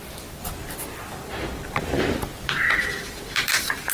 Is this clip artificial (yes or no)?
no